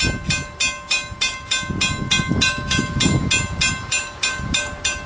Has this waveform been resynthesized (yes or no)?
no